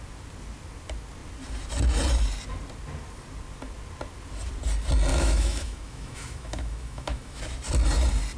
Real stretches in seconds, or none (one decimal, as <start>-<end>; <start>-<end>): 0.0-5.1; 7.4-8.4